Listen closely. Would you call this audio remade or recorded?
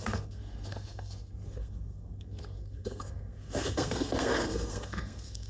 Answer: remade